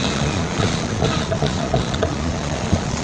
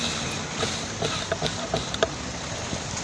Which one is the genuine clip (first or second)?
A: second